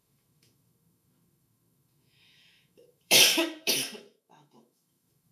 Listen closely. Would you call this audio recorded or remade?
remade